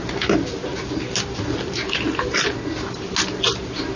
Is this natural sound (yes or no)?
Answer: yes